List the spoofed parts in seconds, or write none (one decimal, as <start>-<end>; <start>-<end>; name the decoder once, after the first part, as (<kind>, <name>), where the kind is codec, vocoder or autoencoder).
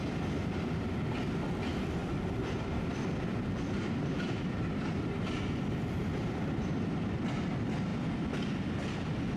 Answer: 2.0-2.8 (vocoder, BigVGAN v2); 3.3-7.2